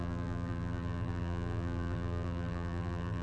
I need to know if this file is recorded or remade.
remade